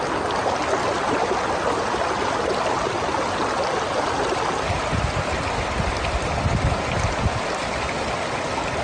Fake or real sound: real